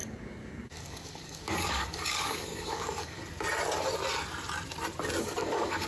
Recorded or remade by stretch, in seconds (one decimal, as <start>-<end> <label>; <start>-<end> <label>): 0.0-3.2 remade; 3.2-5.2 recorded; 5.2-5.9 remade